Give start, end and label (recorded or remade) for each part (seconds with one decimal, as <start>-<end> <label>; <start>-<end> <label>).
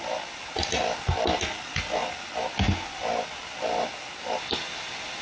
0.0-5.2 recorded